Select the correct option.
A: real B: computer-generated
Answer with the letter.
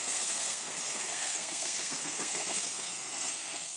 B